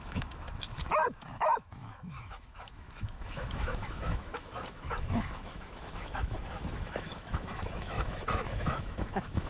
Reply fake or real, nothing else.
fake